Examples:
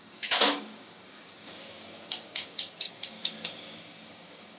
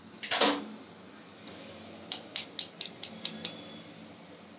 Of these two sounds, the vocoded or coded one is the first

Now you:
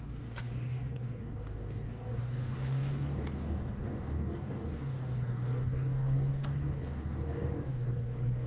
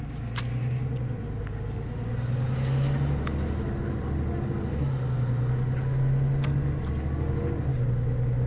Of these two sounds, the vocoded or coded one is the first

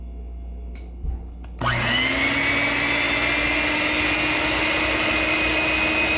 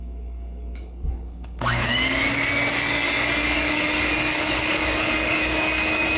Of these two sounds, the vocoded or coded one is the second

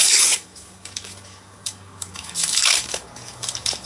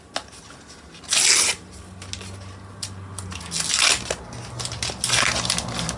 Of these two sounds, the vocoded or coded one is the first